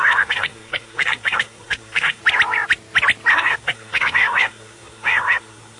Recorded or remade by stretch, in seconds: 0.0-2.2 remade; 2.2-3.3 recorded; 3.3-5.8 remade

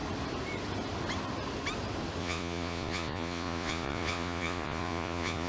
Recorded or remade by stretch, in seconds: 0.0-2.2 recorded; 2.2-5.5 remade

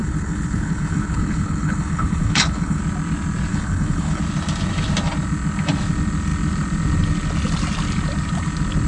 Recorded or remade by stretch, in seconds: 0.0-2.8 remade; 2.8-3.5 recorded; 3.5-4.2 remade; 4.2-8.9 recorded

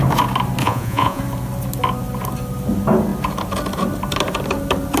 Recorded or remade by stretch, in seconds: 0.0-0.6 recorded; 0.6-1.2 remade; 1.2-5.0 recorded

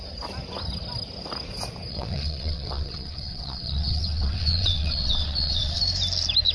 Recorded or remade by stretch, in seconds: 0.0-1.9 recorded; 1.9-5.8 remade; 5.8-6.5 recorded

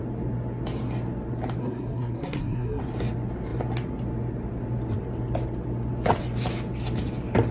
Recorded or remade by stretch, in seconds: 0.0-1.6 recorded; 1.6-2.8 remade; 2.8-7.5 recorded

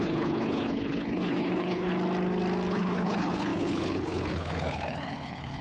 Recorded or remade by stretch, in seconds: 0.0-1.9 remade; 1.9-2.7 recorded; 2.7-5.6 remade

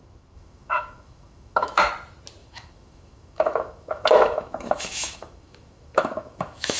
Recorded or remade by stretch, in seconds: 0.0-1.9 remade; 1.9-2.4 recorded; 2.4-6.8 remade